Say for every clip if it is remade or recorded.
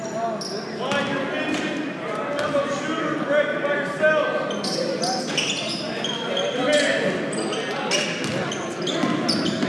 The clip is recorded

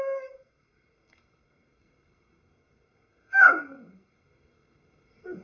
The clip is remade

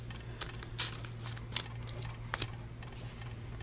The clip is recorded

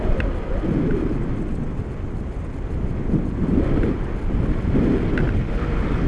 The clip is recorded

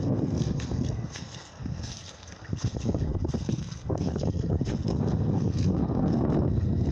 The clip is remade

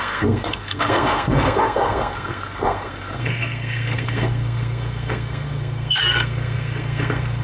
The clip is remade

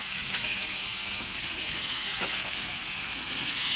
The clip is remade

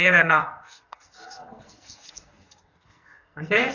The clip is remade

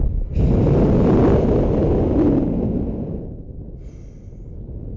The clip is recorded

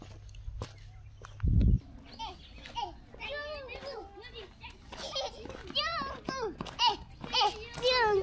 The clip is recorded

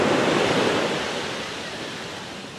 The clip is recorded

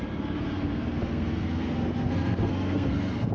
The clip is remade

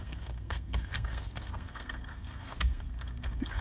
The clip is remade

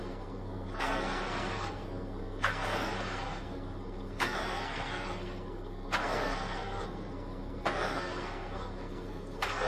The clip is remade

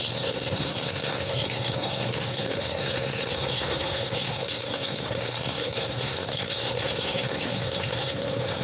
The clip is remade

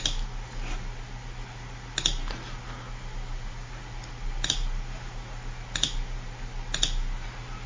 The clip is recorded